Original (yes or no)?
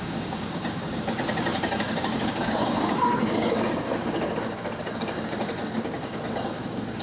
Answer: no